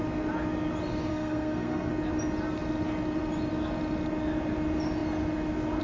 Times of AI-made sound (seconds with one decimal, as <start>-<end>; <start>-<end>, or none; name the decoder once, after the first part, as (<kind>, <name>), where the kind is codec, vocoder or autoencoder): 1.1-1.9 (codec, SNAC)